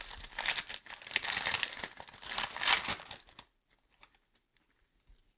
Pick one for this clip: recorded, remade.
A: recorded